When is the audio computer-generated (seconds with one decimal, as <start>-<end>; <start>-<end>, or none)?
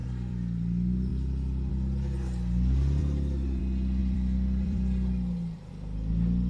0.0-0.6; 3.0-3.6; 4.0-5.7